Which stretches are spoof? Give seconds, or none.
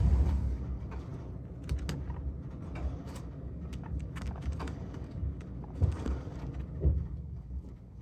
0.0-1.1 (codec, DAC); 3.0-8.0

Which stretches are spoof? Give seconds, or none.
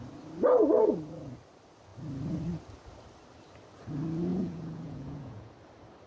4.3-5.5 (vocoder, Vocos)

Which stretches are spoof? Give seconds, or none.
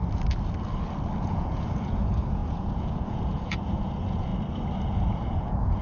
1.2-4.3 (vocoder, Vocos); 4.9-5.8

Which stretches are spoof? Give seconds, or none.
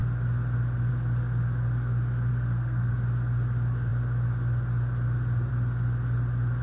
2.3-2.9 (codec, SNAC)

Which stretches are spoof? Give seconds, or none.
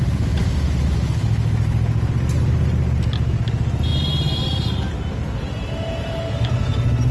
none